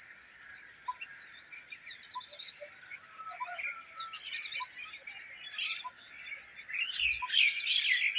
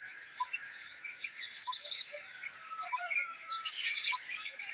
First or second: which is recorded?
first